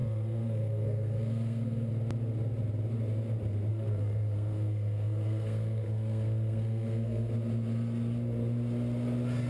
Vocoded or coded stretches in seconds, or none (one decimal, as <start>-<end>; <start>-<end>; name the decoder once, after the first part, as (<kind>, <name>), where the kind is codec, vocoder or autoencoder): 0.0-1.9 (codec, SNAC); 3.7-7.3